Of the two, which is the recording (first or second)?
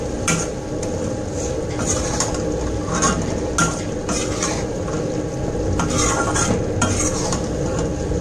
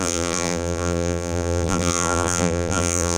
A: first